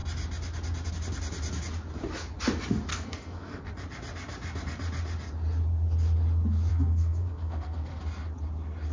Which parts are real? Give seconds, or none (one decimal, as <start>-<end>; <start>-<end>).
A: 0.0-2.9; 3.7-6.7; 8.0-8.9